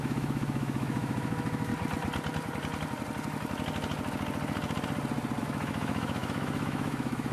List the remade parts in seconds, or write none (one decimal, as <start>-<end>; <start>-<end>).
0.0-1.7; 5.4-7.3